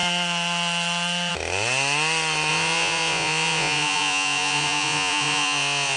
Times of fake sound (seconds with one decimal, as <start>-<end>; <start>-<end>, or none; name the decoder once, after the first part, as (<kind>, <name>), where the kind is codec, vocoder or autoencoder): 2.5-6.0 (vocoder, Vocos)